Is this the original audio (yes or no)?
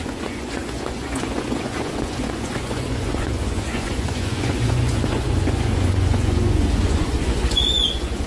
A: no